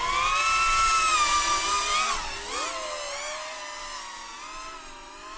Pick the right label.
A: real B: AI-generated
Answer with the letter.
A